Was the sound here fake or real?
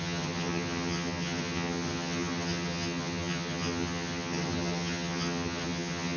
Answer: fake